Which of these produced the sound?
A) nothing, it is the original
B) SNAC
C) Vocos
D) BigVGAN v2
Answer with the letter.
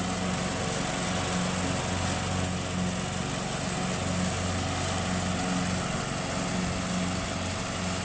A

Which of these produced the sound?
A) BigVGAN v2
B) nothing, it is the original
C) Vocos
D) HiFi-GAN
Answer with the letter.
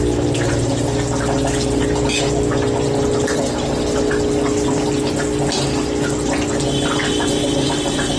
B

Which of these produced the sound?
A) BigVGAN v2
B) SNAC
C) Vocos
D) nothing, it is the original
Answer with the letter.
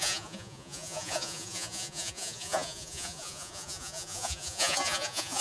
C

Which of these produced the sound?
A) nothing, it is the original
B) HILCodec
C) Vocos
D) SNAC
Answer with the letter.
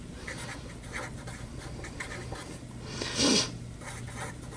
A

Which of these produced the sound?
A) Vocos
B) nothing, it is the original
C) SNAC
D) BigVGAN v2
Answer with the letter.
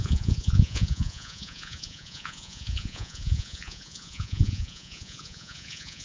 A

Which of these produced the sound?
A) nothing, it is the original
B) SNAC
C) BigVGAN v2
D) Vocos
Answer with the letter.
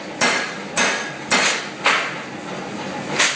A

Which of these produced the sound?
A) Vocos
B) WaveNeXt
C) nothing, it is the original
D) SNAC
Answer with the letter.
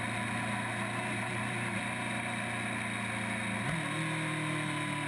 C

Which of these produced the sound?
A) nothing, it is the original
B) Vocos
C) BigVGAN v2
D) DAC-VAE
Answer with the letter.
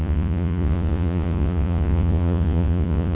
B